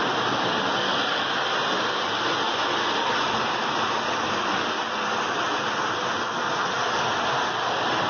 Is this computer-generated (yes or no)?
no